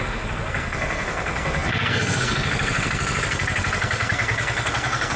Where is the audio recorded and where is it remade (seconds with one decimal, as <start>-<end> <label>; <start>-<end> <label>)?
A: 0.0-5.2 remade